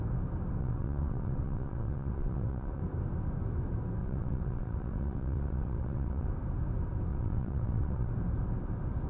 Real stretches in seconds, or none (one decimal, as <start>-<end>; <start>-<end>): 0.0-0.6; 2.8-4.0; 6.3-7.1; 8.1-9.1